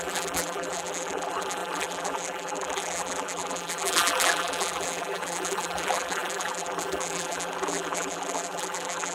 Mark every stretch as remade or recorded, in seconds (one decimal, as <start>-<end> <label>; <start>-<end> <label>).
0.0-9.1 remade